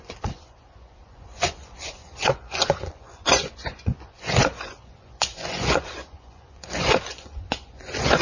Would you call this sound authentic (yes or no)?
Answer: no